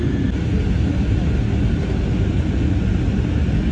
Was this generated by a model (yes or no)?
no